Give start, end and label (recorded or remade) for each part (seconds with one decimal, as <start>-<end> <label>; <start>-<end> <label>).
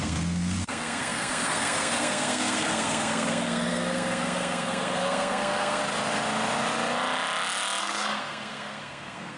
0.0-5.8 remade; 5.8-7.8 recorded; 7.8-9.4 remade